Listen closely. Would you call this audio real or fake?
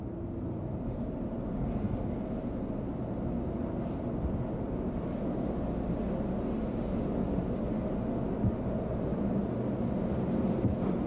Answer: real